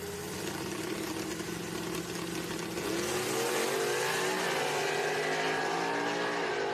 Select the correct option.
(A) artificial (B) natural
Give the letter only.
B